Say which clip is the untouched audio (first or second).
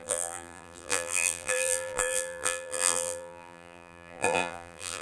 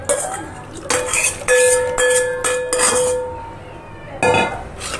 second